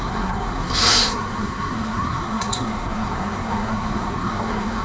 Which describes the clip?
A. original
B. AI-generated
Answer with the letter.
B